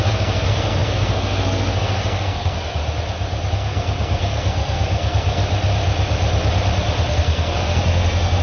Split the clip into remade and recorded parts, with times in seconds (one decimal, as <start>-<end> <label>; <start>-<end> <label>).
0.0-2.8 remade; 2.8-3.5 recorded; 3.5-5.4 remade; 5.4-7.1 recorded; 7.1-8.4 remade